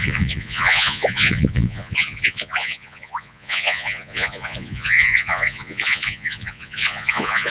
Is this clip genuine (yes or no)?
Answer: no